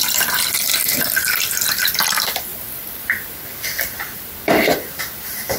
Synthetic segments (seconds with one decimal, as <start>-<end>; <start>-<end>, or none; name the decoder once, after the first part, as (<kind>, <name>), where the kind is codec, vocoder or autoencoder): 0.0-0.7 (vocoder, BigVGAN v2); 1.7-2.5; 4.0-5.6